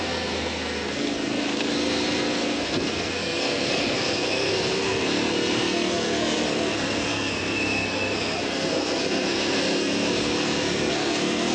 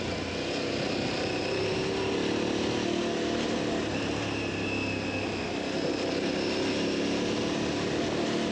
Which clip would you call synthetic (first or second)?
first